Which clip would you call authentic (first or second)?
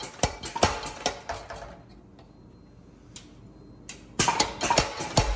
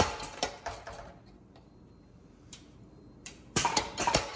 first